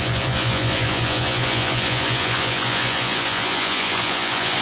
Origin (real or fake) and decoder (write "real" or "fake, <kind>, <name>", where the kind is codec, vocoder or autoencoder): fake, vocoder, Vocos